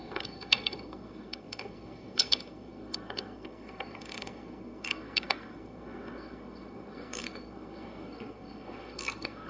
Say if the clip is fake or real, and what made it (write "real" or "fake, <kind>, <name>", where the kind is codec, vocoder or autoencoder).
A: fake, codec, SNAC